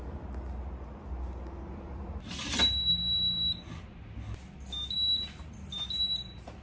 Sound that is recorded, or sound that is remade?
recorded